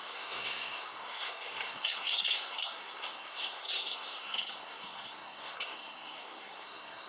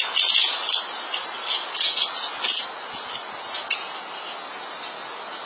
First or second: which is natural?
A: second